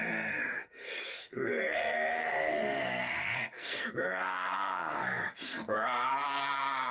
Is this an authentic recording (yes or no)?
no